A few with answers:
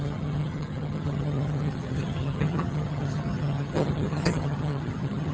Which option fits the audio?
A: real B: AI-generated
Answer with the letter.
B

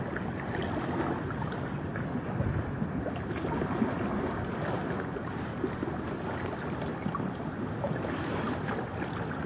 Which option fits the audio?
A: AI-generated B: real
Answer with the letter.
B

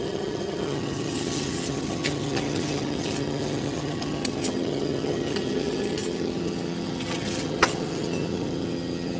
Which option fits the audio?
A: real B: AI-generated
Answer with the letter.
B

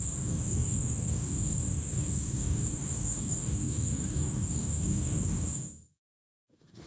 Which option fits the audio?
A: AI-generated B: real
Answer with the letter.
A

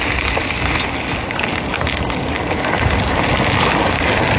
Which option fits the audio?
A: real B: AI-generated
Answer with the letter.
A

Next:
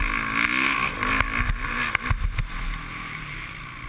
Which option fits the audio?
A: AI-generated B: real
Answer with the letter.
B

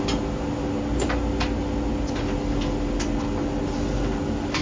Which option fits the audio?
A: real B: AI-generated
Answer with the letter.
A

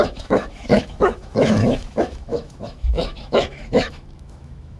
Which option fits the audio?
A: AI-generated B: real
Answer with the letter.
A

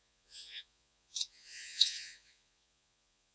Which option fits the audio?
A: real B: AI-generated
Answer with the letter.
B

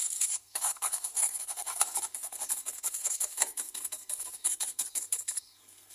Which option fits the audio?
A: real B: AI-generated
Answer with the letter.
B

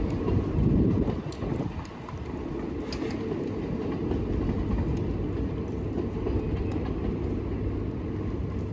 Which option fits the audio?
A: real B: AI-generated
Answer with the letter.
A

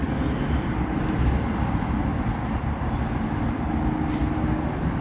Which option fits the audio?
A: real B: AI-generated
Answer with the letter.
A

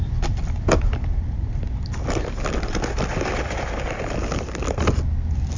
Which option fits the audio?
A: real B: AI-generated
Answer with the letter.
A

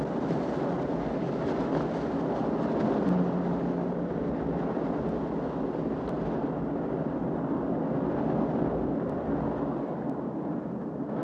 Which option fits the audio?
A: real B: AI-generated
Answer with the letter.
A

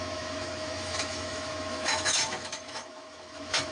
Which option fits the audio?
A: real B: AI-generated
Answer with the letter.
B